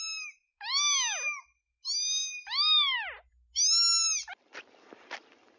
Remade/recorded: recorded